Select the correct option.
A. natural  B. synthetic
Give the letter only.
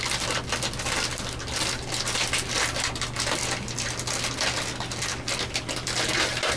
A